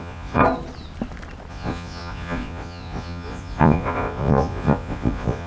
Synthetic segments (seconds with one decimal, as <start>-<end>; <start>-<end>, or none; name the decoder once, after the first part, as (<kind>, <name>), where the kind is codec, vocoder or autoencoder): 0.0-0.4 (vocoder, Vocos); 1.5-5.5